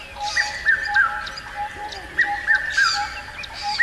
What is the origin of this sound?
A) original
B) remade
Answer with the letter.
A